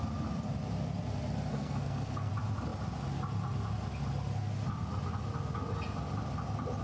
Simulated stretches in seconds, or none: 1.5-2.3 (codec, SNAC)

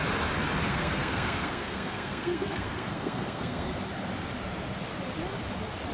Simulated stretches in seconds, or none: 0.7-3.8 (codec, SNAC)

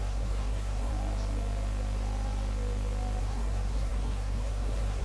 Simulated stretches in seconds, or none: 0.0-0.9 (codec, SNAC); 3.2-5.0

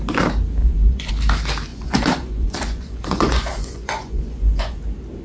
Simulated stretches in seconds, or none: 0.6-1.1 (vocoder, Vocos); 1.7-4.8

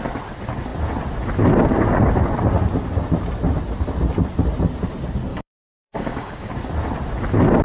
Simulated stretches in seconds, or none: 5.3-6.5 (codec, DAC)

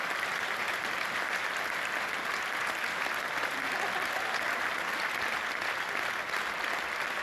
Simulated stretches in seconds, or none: none